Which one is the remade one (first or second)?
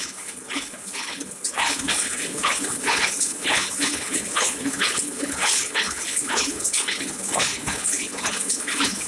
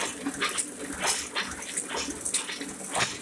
first